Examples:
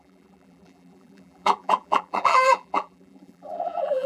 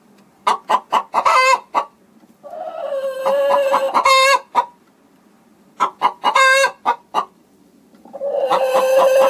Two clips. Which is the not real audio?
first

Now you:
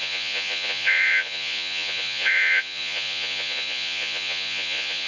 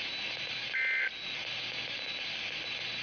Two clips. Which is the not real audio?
first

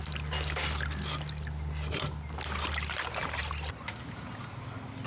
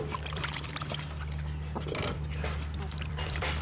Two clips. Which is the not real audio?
second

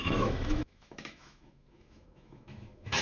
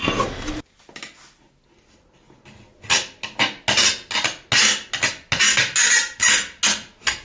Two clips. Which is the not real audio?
first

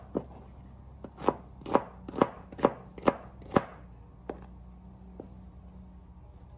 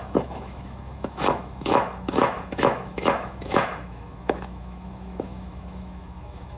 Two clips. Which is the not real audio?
second